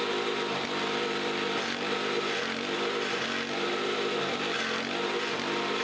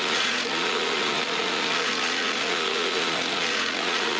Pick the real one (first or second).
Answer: first